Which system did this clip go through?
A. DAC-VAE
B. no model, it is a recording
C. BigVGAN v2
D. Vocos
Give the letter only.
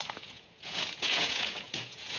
D